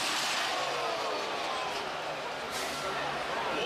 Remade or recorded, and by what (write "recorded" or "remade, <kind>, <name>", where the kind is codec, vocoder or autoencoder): recorded